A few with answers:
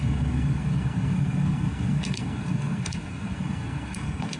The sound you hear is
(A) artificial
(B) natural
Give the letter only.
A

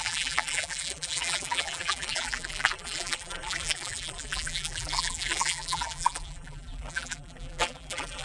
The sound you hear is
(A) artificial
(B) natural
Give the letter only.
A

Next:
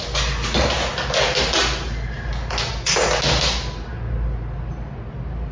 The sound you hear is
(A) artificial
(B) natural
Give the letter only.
B